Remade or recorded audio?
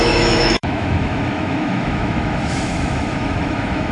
remade